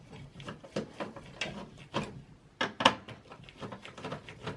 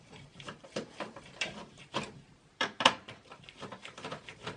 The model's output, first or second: second